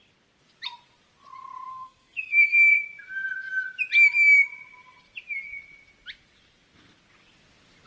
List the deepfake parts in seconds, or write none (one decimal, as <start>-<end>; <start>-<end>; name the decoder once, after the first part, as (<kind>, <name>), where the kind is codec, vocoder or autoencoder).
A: 1.7-2.8 (codec, SNAC)